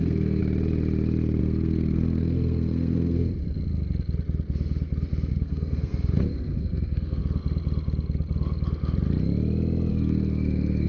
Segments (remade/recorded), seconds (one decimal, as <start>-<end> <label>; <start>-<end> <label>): 0.0-0.4 remade; 0.4-1.4 recorded; 1.4-3.3 remade; 3.3-5.3 recorded; 5.3-7.2 remade; 7.2-9.9 recorded; 9.9-10.9 remade